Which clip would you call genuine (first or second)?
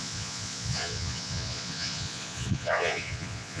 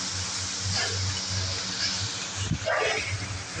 second